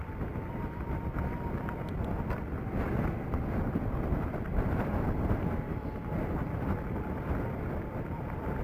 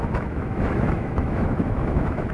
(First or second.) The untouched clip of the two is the first